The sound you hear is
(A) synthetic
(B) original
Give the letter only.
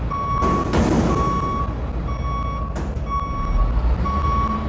B